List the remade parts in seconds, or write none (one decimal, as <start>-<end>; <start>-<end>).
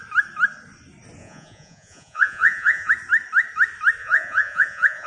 1.2-2.9; 4.0-5.1